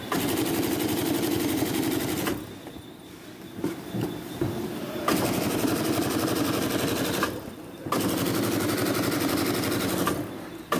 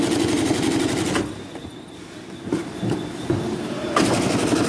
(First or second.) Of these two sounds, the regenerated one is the first